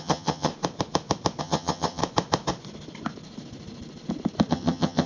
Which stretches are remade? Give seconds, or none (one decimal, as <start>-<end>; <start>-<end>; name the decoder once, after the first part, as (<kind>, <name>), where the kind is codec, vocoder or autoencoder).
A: 0.0-0.5 (vocoder, HiFi-GAN); 1.4-2.0; 4.5-5.1